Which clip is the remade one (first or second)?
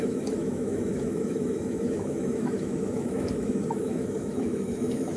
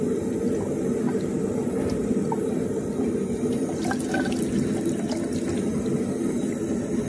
first